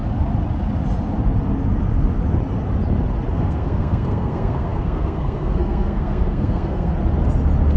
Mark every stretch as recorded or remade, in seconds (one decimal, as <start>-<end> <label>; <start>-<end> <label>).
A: 0.0-3.3 recorded; 3.3-6.9 remade; 6.9-7.8 recorded